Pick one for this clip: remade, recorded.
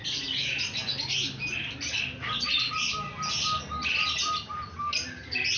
recorded